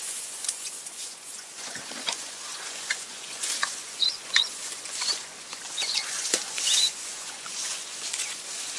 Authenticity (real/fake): fake